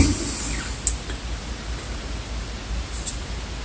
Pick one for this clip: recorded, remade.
recorded